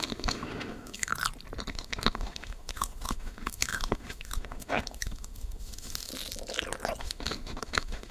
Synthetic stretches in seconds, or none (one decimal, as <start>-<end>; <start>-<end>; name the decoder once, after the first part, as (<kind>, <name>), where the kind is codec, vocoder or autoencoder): 0.0-1.1 (autoencoder, DAC-VAE); 1.7-6.1; 7.0-8.1